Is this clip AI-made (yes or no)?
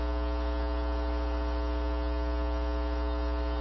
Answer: no